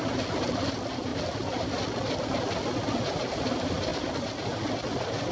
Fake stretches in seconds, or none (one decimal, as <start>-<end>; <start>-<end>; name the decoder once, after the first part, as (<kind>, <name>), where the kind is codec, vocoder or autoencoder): 0.0-1.1 (vocoder, BigVGAN v2); 3.1-3.9